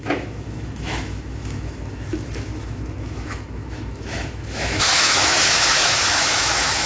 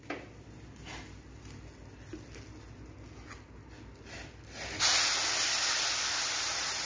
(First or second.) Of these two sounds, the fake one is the first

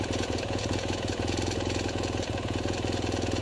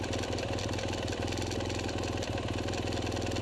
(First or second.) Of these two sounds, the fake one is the first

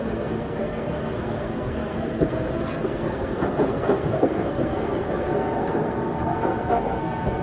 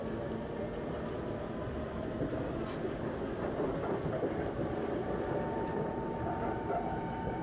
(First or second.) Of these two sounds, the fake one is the first